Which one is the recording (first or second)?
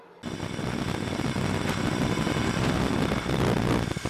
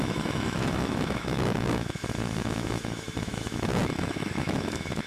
first